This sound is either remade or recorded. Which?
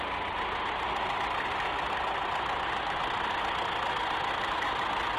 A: recorded